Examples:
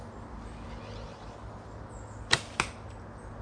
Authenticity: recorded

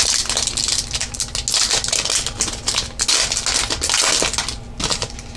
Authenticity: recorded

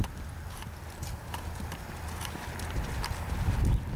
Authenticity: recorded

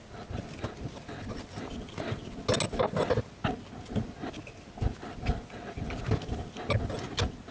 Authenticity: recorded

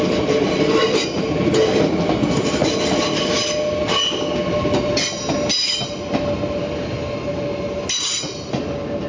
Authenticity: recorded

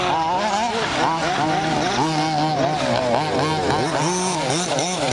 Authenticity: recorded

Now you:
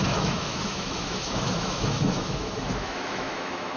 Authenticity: remade